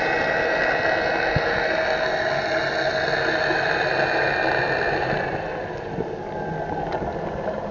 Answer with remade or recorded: recorded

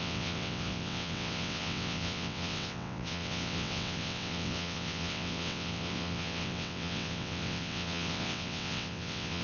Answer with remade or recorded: remade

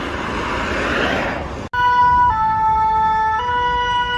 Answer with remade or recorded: recorded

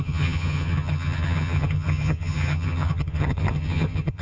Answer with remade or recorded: remade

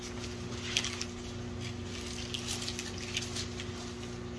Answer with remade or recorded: recorded